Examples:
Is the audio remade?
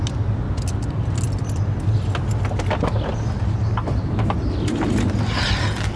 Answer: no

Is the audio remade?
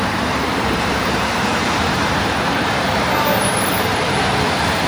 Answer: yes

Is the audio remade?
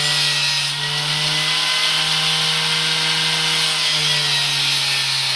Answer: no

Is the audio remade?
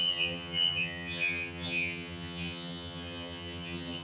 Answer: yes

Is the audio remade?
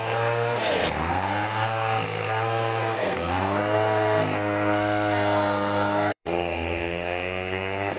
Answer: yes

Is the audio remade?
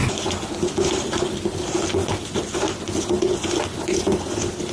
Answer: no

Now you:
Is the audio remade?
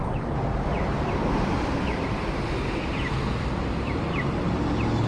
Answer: yes